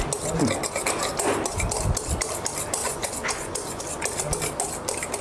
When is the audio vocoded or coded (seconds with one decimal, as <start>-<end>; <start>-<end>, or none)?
2.8-3.8